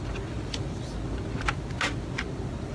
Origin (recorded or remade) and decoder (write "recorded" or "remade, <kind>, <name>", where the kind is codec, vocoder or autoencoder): recorded